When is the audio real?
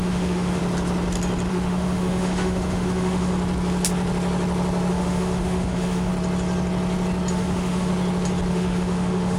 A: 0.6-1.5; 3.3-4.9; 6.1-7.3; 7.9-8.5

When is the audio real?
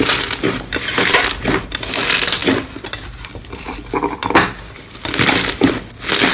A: 0.0-6.3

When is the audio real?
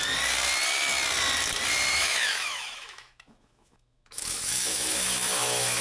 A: 0.0-1.9